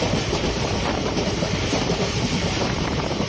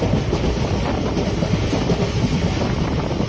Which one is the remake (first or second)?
first